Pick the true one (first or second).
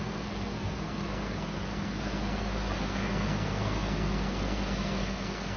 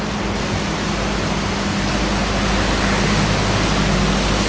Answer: second